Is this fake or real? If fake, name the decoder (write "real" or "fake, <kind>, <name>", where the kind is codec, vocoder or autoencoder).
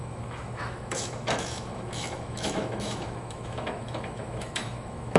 fake, autoencoder, DAC-VAE